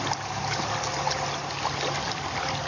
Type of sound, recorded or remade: recorded